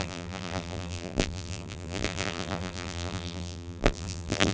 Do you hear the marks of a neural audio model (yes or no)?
yes